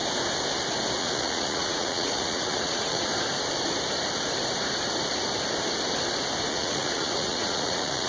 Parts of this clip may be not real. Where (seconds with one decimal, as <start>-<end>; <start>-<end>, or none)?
1.0-3.1; 6.5-8.1